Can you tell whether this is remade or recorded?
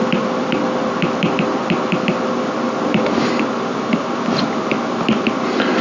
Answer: recorded